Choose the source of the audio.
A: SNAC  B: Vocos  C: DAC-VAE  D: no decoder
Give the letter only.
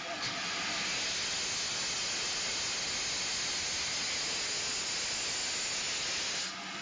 D